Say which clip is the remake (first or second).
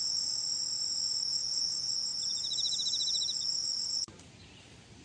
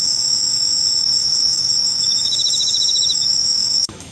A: second